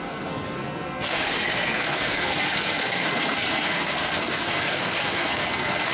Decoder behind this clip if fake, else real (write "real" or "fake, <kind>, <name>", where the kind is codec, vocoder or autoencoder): fake, codec, SNAC